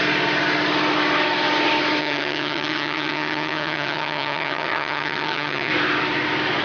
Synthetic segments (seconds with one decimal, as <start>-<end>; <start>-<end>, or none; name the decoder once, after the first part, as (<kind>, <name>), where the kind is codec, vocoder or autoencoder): 2.0-5.7 (vocoder, HiFi-GAN)